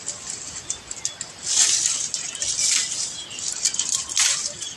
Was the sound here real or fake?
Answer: real